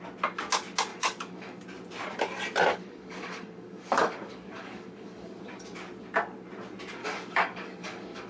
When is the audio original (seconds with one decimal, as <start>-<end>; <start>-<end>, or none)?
0.0-0.9; 1.6-2.7; 5.4-7.0